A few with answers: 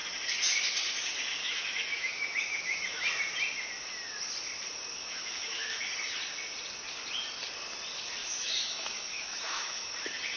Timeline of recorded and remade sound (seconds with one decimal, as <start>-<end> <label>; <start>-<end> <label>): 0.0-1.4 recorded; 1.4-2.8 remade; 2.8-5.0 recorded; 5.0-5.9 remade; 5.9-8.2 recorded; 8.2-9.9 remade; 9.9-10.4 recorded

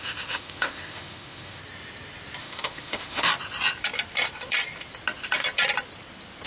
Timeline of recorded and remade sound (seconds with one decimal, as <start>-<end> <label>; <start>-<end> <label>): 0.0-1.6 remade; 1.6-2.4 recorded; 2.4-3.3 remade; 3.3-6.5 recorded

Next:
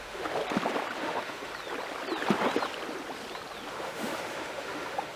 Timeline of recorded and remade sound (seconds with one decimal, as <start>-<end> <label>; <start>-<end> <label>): 0.0-0.4 remade; 0.4-1.0 recorded; 1.0-1.5 remade; 1.5-3.7 recorded; 3.7-5.2 remade

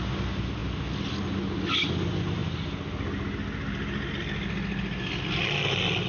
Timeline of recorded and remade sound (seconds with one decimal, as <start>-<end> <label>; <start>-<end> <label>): 0.0-6.1 recorded